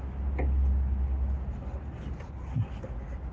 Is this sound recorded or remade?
recorded